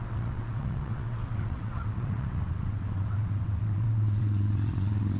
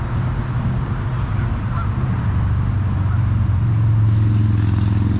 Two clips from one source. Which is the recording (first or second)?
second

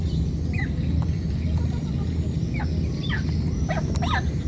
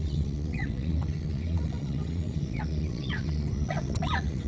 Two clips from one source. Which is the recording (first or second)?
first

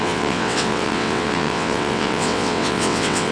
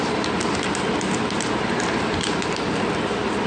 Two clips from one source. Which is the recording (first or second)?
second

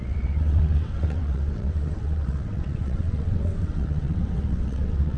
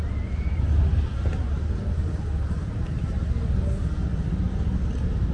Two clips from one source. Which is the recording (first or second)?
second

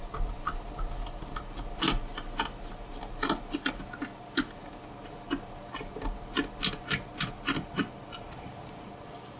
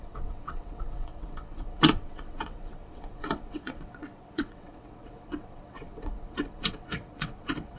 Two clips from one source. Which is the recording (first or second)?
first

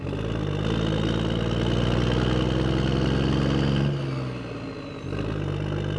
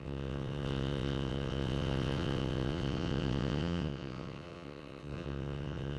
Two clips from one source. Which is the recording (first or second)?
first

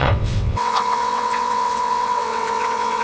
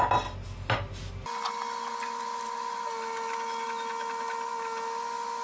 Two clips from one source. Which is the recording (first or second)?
second